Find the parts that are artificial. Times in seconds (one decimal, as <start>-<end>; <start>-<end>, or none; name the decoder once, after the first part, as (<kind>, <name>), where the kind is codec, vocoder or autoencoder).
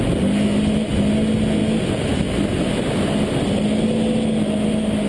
none